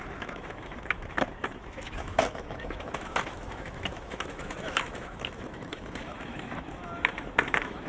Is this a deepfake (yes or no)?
yes